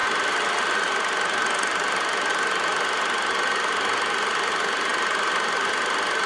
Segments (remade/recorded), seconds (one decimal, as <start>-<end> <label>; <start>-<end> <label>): 0.0-6.3 recorded